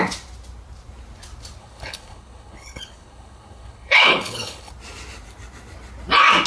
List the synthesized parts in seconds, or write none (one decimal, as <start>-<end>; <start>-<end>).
1.6-4.7